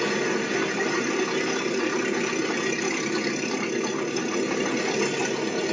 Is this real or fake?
real